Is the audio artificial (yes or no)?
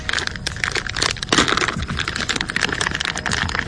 no